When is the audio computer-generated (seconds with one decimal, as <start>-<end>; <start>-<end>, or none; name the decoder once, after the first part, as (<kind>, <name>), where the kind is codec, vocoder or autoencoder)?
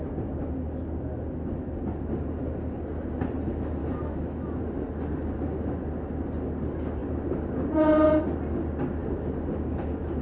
3.8-4.6 (autoencoder, DAC-VAE)